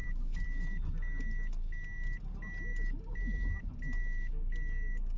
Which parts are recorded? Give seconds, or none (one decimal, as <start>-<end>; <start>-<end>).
0.6-2.7; 3.7-5.2